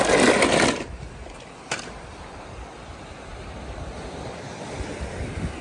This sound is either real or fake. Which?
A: real